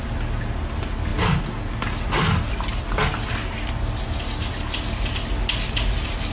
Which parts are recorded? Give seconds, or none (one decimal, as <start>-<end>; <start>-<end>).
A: 0.0-6.3